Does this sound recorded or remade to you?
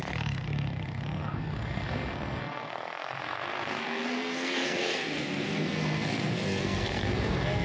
remade